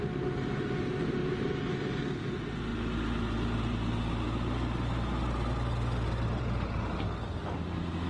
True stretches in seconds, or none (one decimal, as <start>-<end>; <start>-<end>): 0.0-8.1